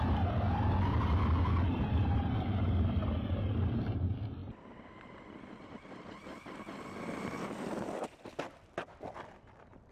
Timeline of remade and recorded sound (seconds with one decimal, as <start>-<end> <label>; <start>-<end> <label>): 0.0-1.7 recorded; 1.7-2.6 remade; 2.6-9.9 recorded